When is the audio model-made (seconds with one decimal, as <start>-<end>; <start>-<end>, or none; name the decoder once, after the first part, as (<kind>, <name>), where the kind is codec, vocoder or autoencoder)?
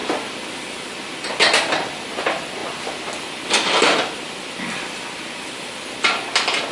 none